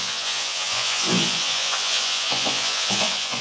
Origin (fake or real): fake